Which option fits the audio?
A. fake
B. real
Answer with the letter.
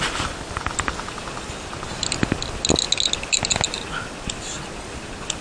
B